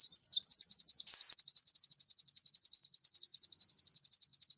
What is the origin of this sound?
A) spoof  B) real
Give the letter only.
B